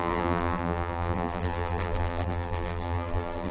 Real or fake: fake